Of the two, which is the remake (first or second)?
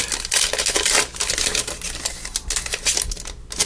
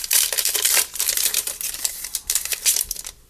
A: second